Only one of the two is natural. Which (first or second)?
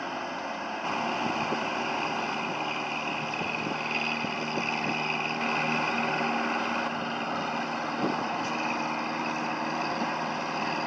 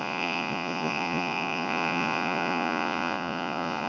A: first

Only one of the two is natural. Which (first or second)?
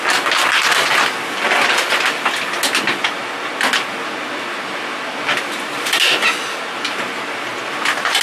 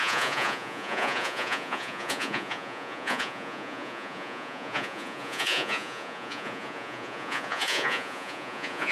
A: first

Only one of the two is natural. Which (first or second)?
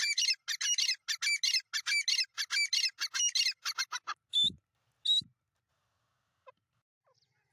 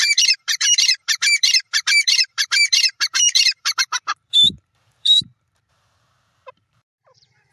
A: first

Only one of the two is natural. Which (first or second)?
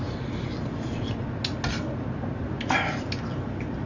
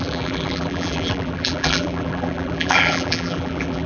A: first